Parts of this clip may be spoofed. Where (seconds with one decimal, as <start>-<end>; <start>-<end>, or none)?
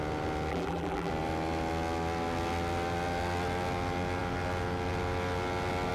0.5-1.1